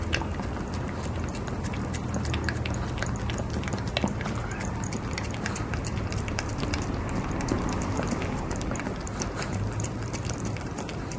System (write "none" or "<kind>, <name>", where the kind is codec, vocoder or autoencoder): vocoder, BigVGAN v2